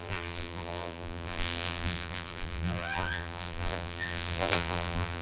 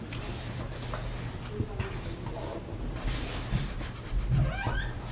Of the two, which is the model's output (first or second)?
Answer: first